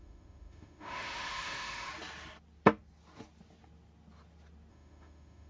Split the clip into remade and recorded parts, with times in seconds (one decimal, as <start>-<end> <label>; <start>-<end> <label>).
0.0-1.9 remade; 1.9-4.7 recorded; 4.7-5.5 remade